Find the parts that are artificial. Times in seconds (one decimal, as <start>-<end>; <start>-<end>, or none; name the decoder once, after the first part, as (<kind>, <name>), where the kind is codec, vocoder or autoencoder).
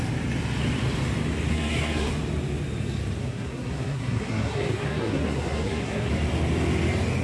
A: 1.5-2.1 (codec, SNAC); 3.2-6.1